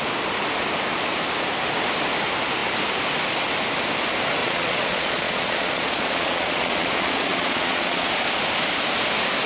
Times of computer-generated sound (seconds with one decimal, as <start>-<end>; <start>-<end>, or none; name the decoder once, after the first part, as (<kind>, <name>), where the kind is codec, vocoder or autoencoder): 4.4-8.1 (vocoder, Vocos)